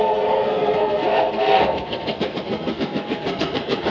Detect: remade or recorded remade